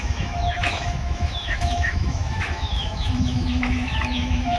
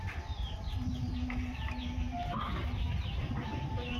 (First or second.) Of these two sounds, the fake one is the first